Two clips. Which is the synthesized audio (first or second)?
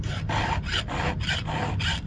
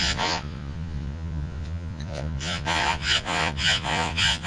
second